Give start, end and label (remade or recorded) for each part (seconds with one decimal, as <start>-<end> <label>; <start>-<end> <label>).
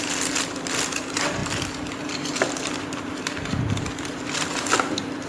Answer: 0.0-1.4 recorded; 1.4-4.6 remade; 4.6-5.3 recorded